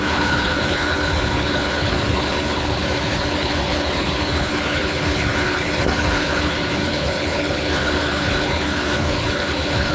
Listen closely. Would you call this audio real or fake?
fake